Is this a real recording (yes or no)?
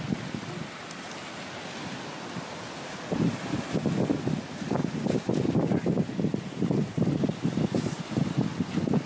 yes